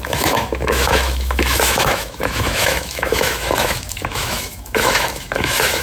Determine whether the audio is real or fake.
fake